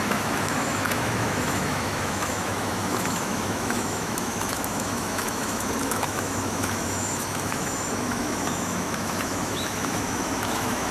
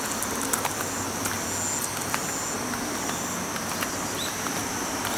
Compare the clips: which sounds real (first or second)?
second